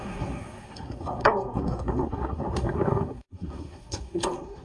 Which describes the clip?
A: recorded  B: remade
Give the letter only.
B